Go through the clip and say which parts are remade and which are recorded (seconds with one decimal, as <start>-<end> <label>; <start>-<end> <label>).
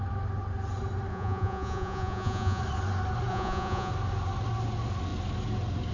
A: 0.0-1.1 recorded; 1.1-2.6 remade; 2.6-3.3 recorded; 3.3-3.9 remade; 3.9-5.9 recorded